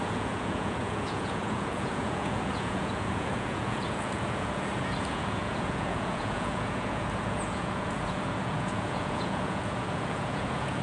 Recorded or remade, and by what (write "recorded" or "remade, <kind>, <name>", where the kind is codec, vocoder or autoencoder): remade, vocoder, Vocos